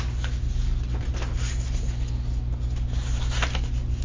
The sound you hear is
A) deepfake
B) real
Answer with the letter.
B